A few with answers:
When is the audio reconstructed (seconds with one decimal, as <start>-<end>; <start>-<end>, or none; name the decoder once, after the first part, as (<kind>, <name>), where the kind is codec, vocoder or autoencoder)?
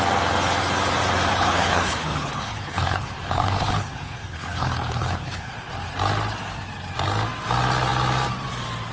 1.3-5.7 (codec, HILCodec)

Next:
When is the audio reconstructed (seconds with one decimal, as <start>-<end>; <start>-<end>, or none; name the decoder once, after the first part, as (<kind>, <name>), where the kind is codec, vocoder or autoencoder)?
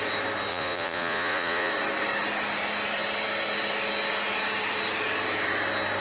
0.5-1.7 (vocoder, Vocos)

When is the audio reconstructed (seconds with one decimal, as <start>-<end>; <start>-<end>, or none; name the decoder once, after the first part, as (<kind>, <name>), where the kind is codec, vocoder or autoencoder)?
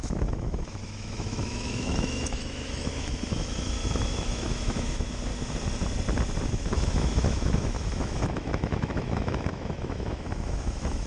0.0-5.3 (autoencoder, DAC-VAE); 6.4-11.1